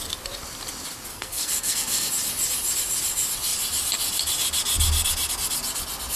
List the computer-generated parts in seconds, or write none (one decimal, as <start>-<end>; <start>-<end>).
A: 1.1-2.1